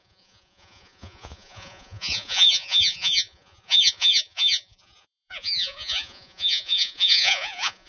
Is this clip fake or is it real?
fake